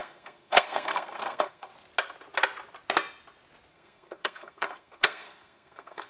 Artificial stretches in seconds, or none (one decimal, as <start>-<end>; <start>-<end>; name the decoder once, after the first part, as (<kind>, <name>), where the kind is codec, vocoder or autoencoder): 0.0-1.7 (codec, SNAC); 3.7-6.1